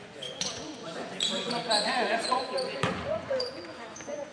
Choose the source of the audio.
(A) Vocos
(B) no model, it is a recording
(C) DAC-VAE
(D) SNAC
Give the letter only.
A